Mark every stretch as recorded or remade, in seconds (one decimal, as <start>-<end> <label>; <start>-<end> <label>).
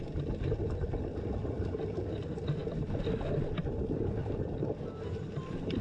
0.0-1.4 recorded; 1.4-2.0 remade; 2.0-4.2 recorded; 4.2-5.8 remade